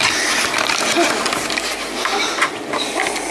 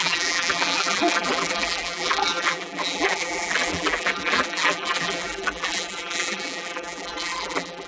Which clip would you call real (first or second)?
first